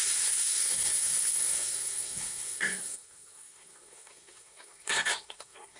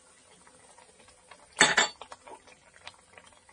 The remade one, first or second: first